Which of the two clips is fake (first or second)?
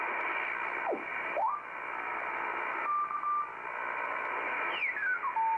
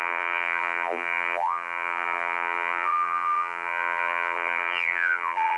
second